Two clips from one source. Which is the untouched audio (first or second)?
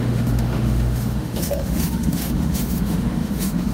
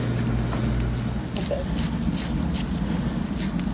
second